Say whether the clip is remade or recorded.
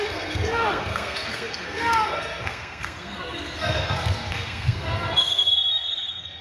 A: remade